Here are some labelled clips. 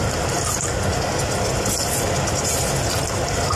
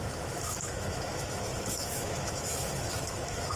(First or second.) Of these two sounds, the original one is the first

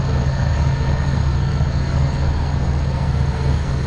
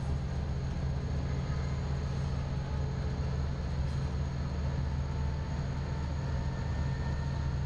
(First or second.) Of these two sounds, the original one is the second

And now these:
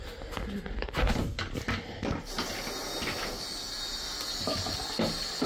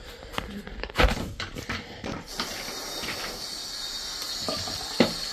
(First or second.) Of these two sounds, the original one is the first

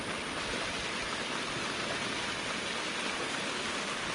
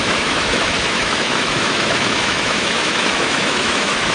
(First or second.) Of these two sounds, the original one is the first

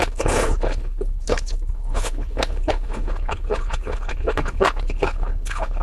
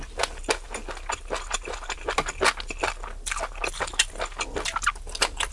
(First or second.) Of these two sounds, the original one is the second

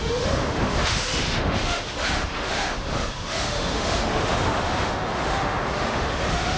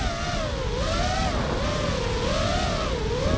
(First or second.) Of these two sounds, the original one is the second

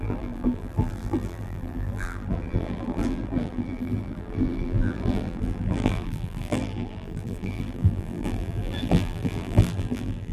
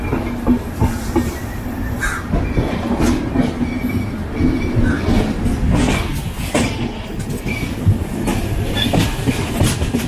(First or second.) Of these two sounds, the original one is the second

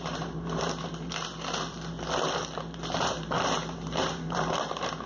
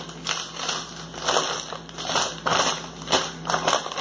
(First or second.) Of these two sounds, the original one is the second